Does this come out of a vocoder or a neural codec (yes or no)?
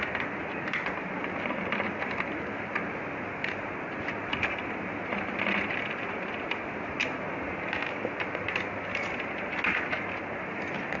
no